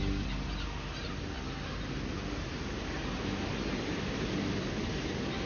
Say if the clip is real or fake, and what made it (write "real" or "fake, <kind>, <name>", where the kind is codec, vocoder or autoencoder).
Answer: real